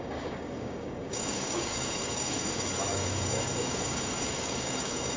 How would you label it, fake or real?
fake